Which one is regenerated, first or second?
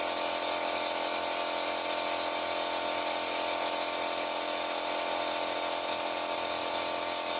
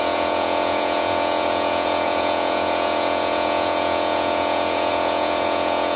second